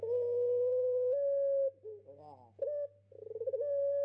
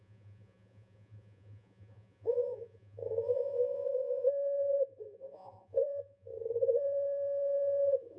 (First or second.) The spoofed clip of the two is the second